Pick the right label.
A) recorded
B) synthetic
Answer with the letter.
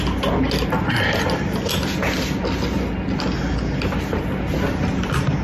A